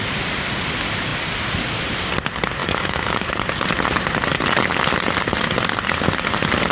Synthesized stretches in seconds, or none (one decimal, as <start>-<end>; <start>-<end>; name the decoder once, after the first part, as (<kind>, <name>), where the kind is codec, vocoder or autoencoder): 2.6-3.3 (autoencoder, DAC-VAE)